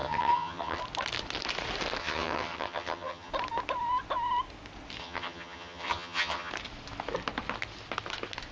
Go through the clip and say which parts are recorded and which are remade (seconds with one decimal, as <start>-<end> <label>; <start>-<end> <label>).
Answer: 0.0-0.8 remade; 0.8-2.0 recorded; 2.0-3.3 remade; 3.3-5.0 recorded; 5.0-6.5 remade; 6.5-8.5 recorded